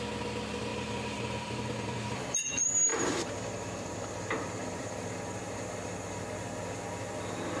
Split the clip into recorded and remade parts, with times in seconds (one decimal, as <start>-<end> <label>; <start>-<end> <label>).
0.0-0.7 recorded; 0.7-2.5 remade; 2.5-2.9 recorded; 2.9-6.2 remade; 6.2-7.6 recorded